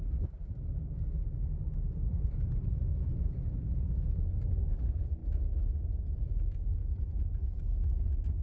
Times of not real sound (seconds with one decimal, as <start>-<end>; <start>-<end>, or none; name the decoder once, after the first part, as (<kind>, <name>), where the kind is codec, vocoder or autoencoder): 2.1-4.4 (vocoder, BigVGAN v2); 6.8-7.4